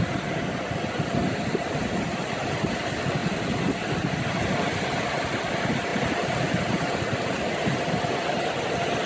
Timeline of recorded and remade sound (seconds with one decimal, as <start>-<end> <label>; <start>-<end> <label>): 0.0-9.1 recorded